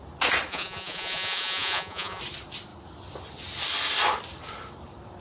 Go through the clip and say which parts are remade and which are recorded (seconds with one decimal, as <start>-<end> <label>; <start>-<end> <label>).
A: 0.0-0.5 recorded; 0.5-2.2 remade; 2.2-5.2 recorded

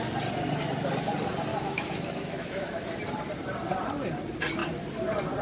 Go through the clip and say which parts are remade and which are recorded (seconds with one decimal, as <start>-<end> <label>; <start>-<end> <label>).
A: 0.0-1.5 recorded; 1.5-3.0 remade; 3.0-5.4 recorded

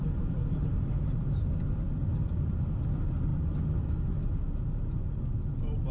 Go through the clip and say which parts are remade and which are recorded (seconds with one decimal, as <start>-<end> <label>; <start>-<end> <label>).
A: 0.0-5.9 recorded

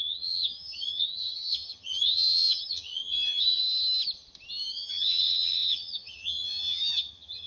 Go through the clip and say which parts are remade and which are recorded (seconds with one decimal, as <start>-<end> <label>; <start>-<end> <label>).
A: 0.0-3.6 remade; 3.6-4.5 recorded; 4.5-7.5 remade

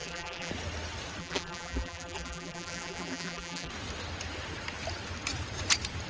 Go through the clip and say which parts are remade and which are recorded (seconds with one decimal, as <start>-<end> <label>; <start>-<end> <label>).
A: 0.0-0.5 remade; 0.5-1.2 recorded; 1.2-3.7 remade; 3.7-6.1 recorded